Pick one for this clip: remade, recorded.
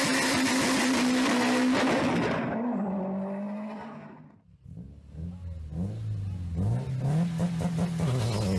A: recorded